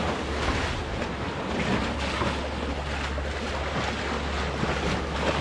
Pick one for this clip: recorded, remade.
recorded